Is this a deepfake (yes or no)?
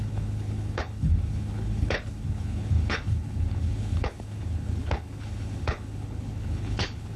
yes